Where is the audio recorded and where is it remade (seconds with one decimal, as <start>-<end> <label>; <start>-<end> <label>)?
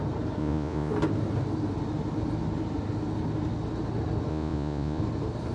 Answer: 0.0-0.4 recorded; 0.4-0.9 remade; 0.9-4.3 recorded; 4.3-5.0 remade; 5.0-5.5 recorded